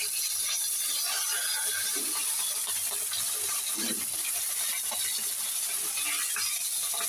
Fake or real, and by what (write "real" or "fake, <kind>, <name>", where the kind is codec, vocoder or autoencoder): real